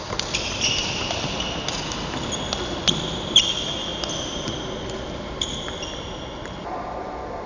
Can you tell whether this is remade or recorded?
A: recorded